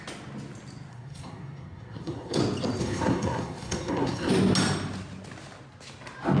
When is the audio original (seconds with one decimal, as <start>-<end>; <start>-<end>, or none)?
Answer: 0.0-0.9; 2.4-2.8; 4.3-6.4